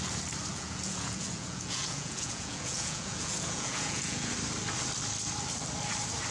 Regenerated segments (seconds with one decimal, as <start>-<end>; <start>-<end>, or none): 0.5-4.3